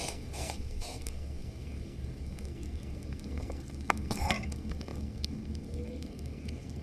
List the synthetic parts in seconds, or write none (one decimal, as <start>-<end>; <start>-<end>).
0.0-6.8